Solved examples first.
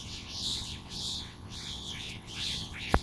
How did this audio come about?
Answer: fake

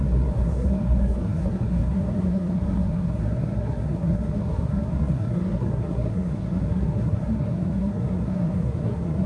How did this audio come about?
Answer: fake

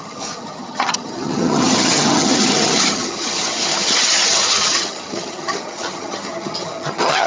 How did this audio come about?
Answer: fake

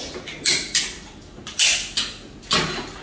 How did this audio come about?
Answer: real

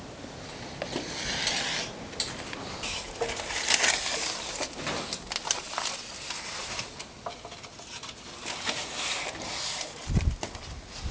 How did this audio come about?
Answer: real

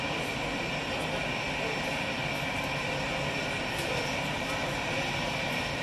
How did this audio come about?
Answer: real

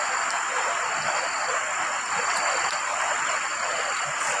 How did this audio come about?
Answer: real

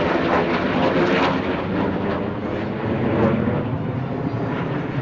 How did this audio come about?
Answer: real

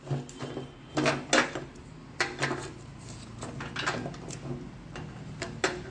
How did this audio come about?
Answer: real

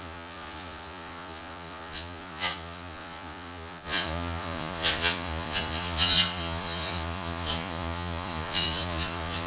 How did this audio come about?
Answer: fake